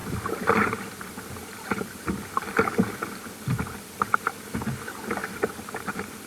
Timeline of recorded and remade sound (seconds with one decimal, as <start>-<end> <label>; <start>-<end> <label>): 0.0-2.9 remade; 2.9-5.2 recorded; 5.2-6.3 remade